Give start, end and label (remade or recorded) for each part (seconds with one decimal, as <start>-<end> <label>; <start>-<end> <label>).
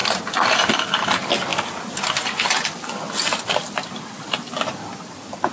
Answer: 0.0-0.6 remade; 0.6-1.5 recorded; 1.5-4.8 remade; 4.8-5.5 recorded